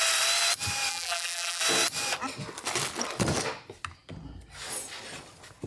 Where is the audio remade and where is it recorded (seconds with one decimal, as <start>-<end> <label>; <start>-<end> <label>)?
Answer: 0.0-0.9 recorded; 0.9-1.6 remade; 1.6-5.7 recorded